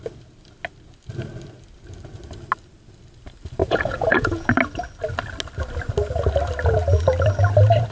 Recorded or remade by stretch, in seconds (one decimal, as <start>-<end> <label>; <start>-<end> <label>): 0.0-3.6 recorded; 3.6-4.5 remade; 4.5-7.9 recorded

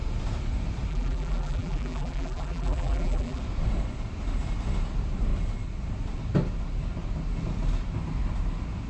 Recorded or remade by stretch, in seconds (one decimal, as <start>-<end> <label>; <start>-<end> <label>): 0.0-0.9 recorded; 0.9-3.4 remade; 3.4-8.9 recorded